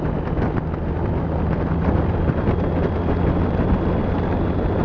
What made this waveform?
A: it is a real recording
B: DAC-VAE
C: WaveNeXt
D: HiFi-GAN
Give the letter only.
A